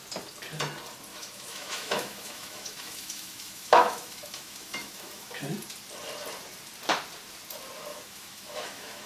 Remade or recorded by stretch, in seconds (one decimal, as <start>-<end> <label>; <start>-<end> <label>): 0.0-1.1 recorded; 1.1-5.4 remade; 5.4-7.9 recorded; 7.9-9.1 remade